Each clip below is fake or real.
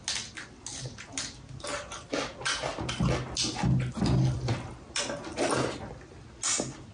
real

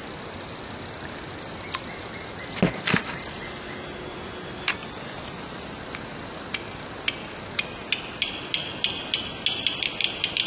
real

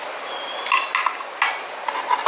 real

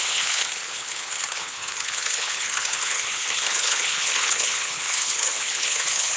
fake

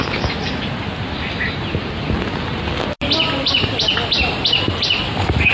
real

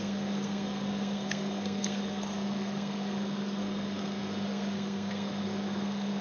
fake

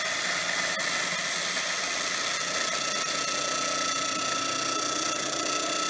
real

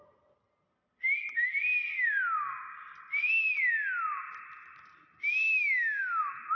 real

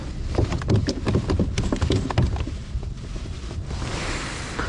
fake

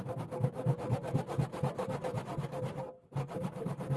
real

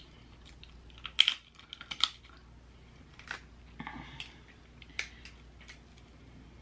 real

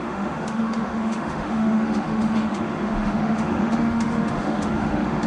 fake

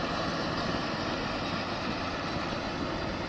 real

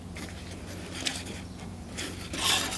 real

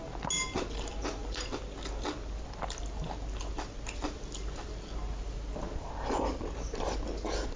real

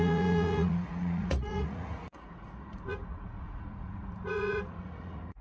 fake